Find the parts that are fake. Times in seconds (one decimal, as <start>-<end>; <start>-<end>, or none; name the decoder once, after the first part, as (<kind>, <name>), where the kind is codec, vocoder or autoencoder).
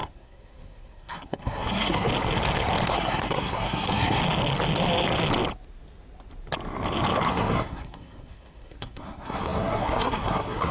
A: 0.0-2.1 (codec, SNAC); 2.9-4.2; 7.3-10.7